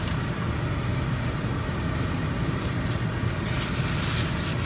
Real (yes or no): yes